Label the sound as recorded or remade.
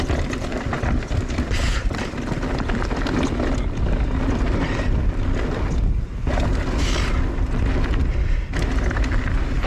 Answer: recorded